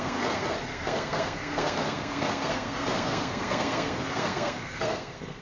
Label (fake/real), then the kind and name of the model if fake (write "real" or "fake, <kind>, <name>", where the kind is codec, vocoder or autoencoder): fake, codec, SNAC